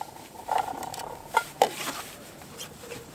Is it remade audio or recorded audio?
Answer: remade